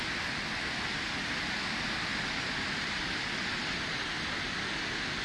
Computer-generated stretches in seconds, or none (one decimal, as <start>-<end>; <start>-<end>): none